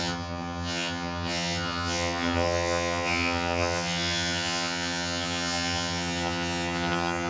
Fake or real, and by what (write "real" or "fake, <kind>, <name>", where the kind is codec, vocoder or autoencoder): fake, vocoder, HiFi-GAN